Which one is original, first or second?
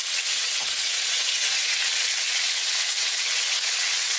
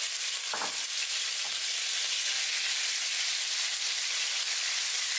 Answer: second